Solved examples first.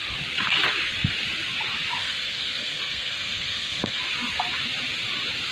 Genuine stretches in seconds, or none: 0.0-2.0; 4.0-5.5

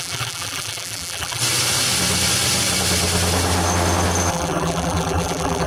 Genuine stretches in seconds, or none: 1.4-4.3

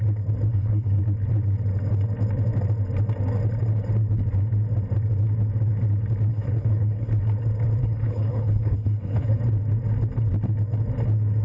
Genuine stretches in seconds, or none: 0.0-0.5; 1.0-6.3; 7.1-7.8; 9.4-11.4

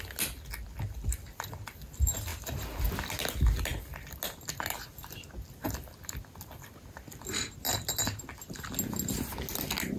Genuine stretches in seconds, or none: 0.0-10.0

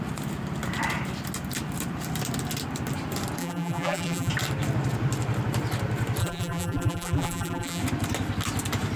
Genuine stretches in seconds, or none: 0.0-3.4; 4.3-6.2; 7.8-9.0